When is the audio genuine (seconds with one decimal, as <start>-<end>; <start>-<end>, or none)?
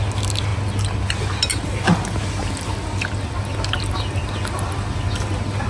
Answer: 0.0-5.7